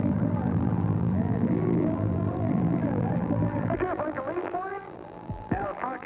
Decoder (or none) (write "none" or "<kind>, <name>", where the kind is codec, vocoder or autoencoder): vocoder, BigVGAN v2